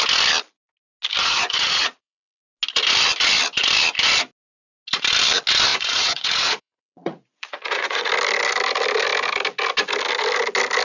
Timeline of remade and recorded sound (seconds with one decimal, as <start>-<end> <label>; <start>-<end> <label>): 0.0-1.2 recorded; 1.2-2.4 remade; 2.4-5.7 recorded; 5.7-8.1 remade; 8.1-10.8 recorded